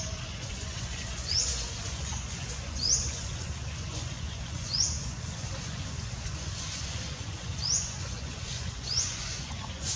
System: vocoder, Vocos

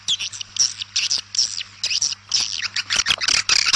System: none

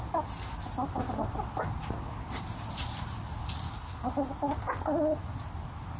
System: none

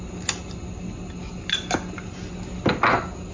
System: none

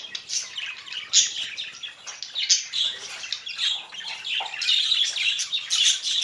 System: none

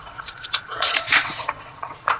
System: vocoder, Vocos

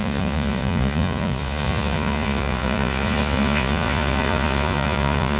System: vocoder, Vocos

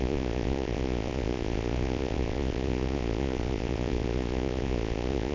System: vocoder, Vocos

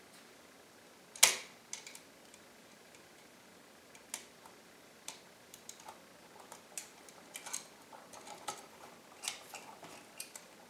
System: none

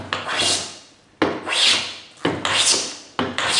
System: none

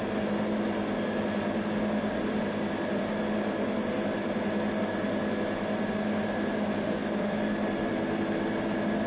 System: none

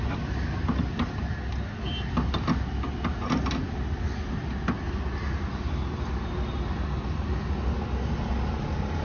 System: none